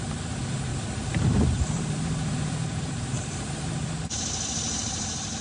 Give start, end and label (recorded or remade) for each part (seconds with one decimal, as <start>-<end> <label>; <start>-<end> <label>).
0.0-0.7 recorded; 0.7-3.9 remade; 3.9-5.4 recorded